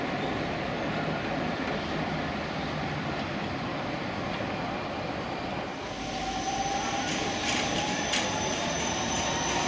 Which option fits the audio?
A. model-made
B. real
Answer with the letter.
A